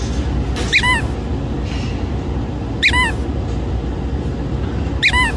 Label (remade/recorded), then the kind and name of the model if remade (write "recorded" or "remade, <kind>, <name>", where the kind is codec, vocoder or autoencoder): recorded